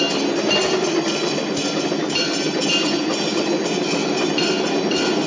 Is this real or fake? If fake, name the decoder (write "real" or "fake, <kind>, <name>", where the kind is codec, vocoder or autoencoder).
real